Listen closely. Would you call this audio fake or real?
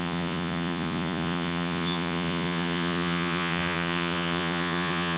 fake